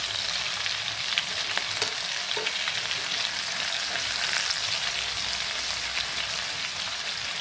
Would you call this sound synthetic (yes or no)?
no